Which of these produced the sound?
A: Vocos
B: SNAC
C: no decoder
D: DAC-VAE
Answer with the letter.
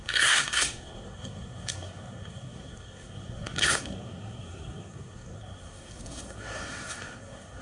B